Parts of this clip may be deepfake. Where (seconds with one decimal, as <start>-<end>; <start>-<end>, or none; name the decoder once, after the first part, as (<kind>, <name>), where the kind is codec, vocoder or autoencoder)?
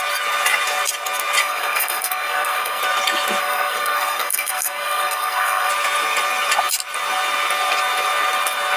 1.4-2.8 (codec, SNAC); 3.4-5.7